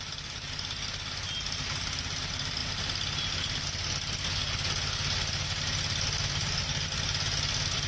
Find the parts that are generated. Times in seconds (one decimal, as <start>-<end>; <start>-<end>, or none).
none